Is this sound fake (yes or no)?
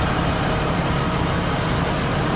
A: yes